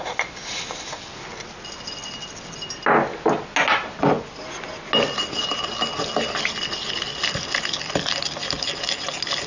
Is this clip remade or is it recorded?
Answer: recorded